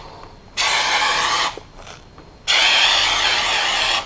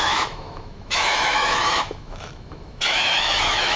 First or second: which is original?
first